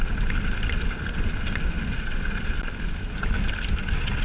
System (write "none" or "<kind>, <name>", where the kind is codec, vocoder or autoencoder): none